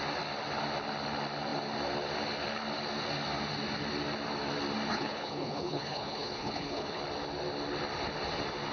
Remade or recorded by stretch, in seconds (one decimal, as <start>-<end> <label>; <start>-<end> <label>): 0.0-4.9 recorded; 4.9-7.0 remade; 7.0-8.7 recorded